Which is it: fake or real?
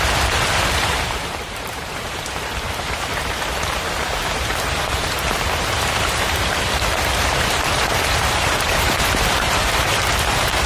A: fake